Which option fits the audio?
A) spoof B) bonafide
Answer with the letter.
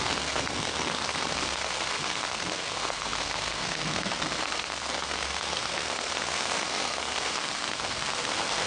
A